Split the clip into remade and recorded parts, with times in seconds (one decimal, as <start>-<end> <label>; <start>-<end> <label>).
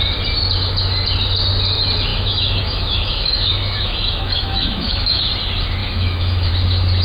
0.0-2.1 recorded; 2.1-5.3 remade; 5.3-5.8 recorded; 5.8-6.5 remade; 6.5-7.0 recorded